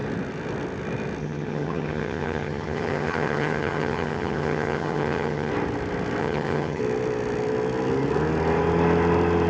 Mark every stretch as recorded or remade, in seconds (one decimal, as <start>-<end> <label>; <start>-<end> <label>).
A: 0.0-1.2 recorded; 1.2-5.5 remade; 5.5-6.2 recorded; 6.2-6.8 remade; 6.8-9.5 recorded